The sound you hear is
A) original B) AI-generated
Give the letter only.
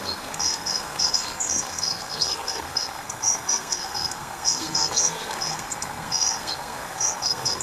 B